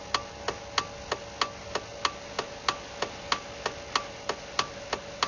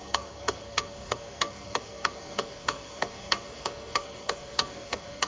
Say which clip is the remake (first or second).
second